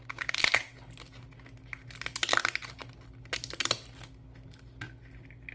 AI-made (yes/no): no